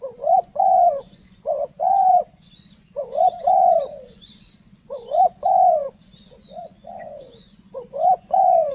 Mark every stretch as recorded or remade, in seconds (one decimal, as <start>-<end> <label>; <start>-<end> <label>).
0.0-8.7 remade